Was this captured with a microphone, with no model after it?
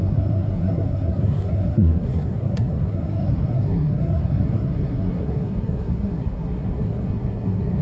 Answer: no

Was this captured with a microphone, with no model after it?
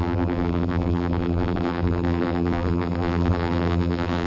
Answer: no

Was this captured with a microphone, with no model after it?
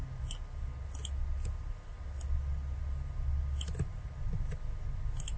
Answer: yes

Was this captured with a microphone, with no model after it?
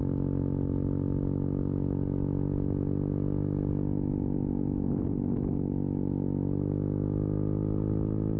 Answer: yes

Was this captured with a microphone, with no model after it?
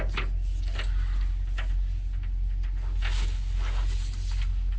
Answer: yes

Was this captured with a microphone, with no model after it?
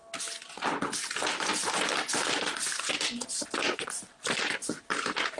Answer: yes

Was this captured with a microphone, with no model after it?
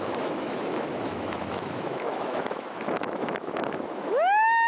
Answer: no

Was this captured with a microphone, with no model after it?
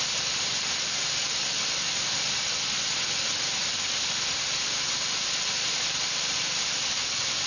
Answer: yes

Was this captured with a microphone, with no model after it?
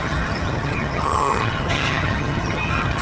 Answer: no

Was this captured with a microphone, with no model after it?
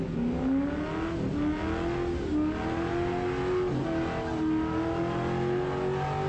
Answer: yes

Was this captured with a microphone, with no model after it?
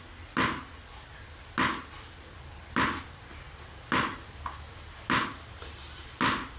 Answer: yes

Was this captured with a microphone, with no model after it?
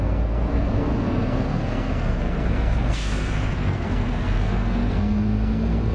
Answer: no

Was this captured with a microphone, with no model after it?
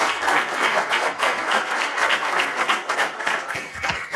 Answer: no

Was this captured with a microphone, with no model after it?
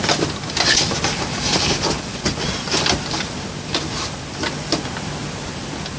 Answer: yes